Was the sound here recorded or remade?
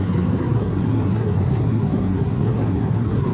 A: remade